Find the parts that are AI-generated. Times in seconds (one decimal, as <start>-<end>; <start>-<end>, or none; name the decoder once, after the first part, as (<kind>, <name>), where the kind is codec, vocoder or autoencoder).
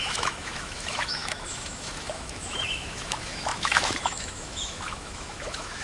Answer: 0.0-5.8 (autoencoder, DAC-VAE)